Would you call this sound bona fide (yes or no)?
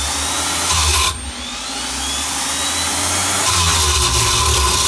yes